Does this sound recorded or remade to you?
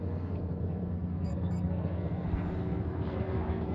remade